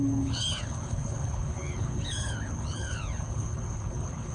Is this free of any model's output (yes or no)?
no